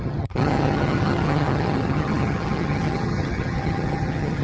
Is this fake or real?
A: fake